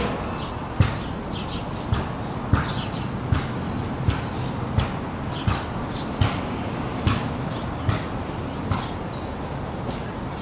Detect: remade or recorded recorded